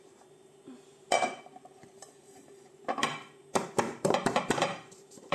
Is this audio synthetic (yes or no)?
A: yes